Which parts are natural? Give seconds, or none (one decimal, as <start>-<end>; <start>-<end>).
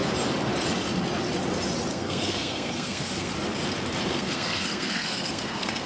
0.0-1.9; 3.3-4.1